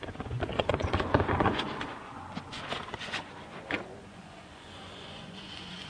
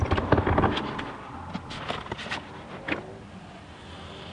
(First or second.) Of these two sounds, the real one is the second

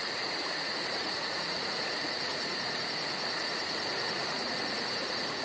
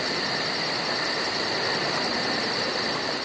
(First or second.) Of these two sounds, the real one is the second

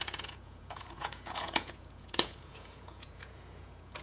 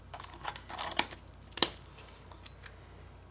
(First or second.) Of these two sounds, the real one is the second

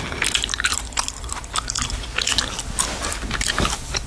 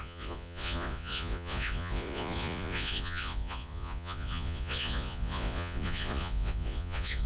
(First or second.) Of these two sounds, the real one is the first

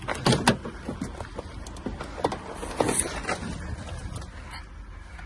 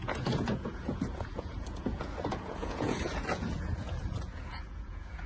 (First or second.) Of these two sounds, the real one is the first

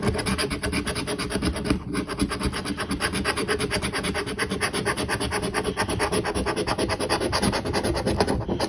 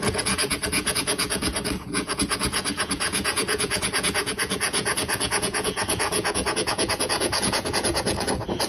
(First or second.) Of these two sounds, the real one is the first